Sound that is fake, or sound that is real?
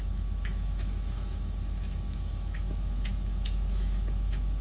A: fake